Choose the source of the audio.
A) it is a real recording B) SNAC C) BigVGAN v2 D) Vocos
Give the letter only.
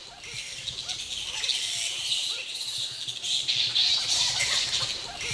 A